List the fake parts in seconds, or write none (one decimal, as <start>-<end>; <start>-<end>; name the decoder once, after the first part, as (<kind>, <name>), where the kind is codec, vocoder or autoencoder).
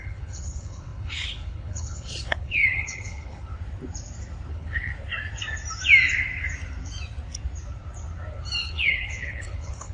0.0-3.5 (codec, HILCodec); 4.5-4.9; 8.6-9.9